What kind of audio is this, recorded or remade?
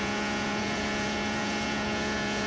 remade